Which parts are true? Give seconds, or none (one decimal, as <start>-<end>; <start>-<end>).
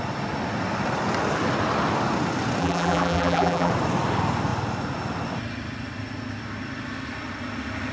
0.0-2.6; 3.7-7.9